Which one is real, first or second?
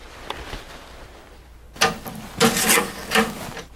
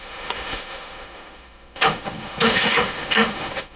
first